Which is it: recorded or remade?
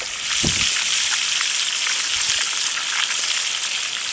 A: recorded